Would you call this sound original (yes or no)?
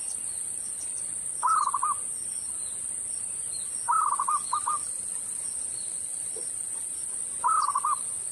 yes